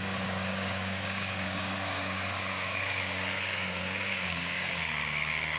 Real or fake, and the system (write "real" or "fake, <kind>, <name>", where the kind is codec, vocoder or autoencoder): fake, codec, DAC